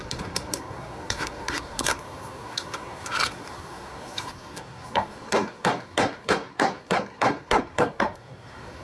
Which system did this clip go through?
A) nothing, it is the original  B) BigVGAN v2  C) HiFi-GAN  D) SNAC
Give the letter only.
D